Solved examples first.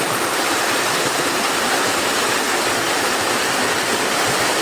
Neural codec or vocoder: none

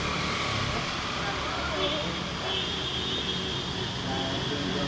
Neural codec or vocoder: none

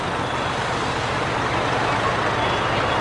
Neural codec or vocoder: none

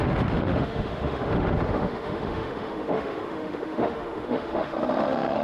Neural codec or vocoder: autoencoder, DAC-VAE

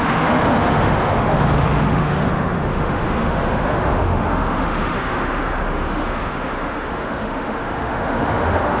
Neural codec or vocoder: autoencoder, DAC-VAE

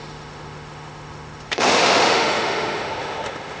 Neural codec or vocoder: autoencoder, DAC-VAE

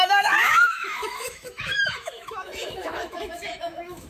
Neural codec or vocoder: autoencoder, DAC-VAE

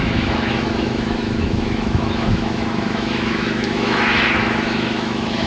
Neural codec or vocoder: autoencoder, DAC-VAE